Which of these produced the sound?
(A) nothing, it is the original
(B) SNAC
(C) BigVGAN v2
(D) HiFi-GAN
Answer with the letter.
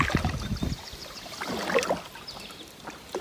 A